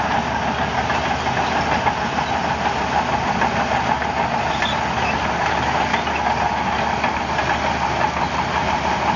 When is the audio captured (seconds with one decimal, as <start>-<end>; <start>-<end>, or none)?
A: 0.0-9.2